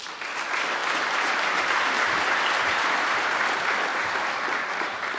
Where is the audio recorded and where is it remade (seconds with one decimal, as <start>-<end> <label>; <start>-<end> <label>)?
0.0-0.8 recorded; 0.8-3.2 remade; 3.2-3.9 recorded; 3.9-5.2 remade